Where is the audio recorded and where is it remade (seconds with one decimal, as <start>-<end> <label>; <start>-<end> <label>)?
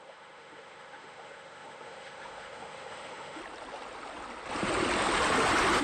0.0-3.4 remade; 3.4-5.8 recorded